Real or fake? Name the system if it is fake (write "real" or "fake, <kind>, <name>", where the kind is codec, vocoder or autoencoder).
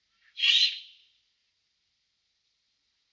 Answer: real